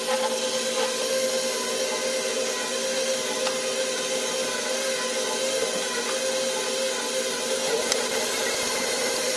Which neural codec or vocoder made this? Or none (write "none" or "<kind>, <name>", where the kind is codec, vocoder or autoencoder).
none